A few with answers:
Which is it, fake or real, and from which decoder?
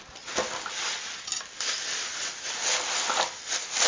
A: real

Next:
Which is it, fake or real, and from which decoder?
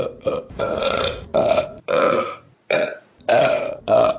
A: fake, vocoder, Vocos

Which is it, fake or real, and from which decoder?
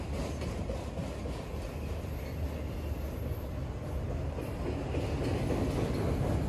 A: real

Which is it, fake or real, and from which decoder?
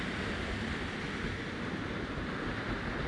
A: real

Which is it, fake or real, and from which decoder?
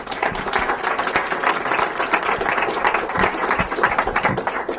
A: real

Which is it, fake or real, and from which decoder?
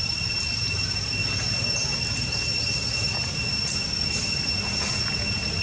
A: real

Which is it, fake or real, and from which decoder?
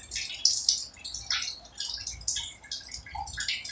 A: real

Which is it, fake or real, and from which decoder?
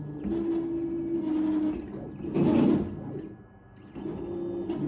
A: real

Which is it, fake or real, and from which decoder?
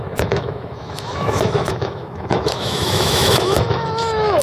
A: fake, autoencoder, DAC-VAE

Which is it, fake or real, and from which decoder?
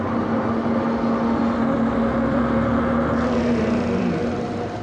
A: fake, vocoder, BigVGAN v2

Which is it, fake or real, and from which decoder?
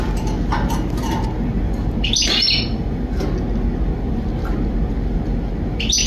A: real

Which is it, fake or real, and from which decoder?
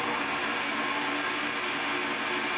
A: real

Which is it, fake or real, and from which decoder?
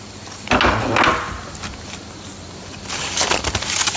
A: real